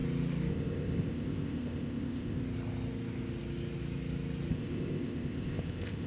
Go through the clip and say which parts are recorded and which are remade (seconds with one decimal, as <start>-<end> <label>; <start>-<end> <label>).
0.0-0.5 recorded; 0.5-2.4 remade; 2.4-4.5 recorded; 4.5-6.1 remade